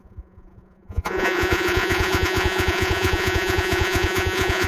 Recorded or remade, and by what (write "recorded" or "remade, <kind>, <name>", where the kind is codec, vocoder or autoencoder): remade, vocoder, Vocos